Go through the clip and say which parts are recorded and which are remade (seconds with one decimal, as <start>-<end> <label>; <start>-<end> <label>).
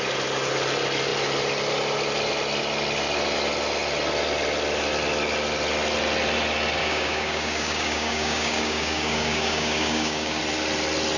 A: 0.0-6.8 recorded; 6.8-10.4 remade; 10.4-11.2 recorded